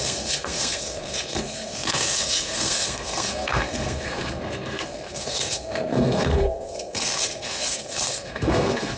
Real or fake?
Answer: fake